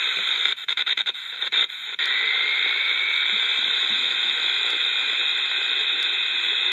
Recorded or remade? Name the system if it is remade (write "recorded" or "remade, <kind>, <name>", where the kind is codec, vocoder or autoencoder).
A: remade, vocoder, BigVGAN v2